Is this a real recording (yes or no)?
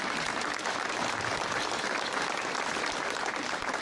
yes